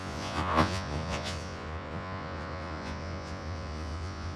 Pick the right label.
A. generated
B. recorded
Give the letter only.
A